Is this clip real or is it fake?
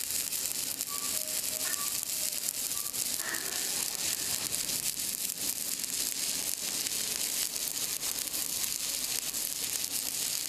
real